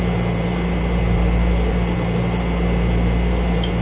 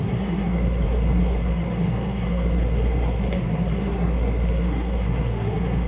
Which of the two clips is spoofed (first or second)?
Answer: second